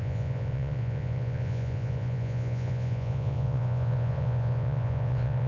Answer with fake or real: fake